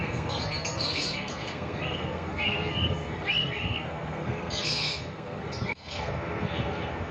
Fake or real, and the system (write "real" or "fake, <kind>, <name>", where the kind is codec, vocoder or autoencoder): fake, codec, SNAC